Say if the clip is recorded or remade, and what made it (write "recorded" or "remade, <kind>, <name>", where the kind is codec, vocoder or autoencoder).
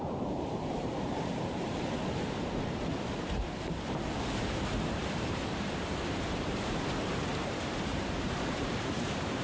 remade, vocoder, BigVGAN v2